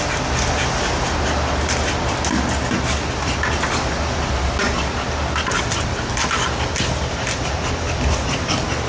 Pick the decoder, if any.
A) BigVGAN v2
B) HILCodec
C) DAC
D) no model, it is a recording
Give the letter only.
D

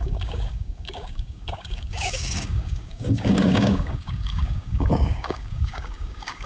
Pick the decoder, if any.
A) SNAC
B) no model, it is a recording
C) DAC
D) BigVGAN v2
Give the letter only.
C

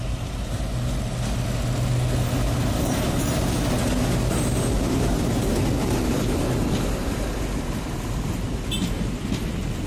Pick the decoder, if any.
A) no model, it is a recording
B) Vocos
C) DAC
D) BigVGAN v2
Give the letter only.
A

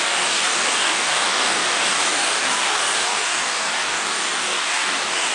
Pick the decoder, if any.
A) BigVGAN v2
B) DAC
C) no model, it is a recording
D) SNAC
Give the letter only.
B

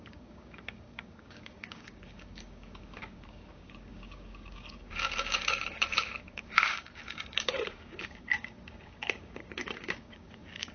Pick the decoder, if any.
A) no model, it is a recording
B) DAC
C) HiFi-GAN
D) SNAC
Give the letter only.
B